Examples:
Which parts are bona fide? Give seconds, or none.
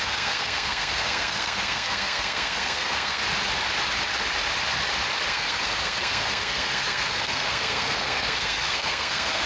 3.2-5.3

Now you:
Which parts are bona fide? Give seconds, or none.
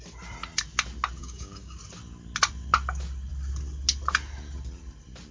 0.0-1.2; 1.8-5.3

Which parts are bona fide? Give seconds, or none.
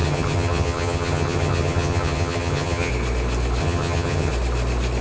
2.9-3.6; 4.3-5.0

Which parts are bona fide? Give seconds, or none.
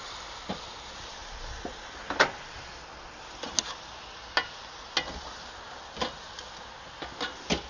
0.0-7.7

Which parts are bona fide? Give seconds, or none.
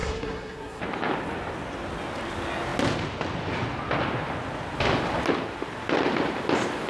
0.8-6.9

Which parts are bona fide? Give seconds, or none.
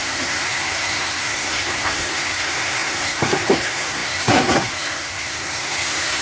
none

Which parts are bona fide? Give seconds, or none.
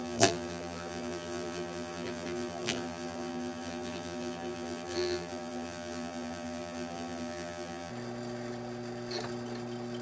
7.9-10.0